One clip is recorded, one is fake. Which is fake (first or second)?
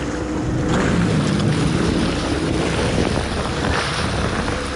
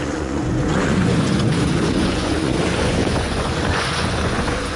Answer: second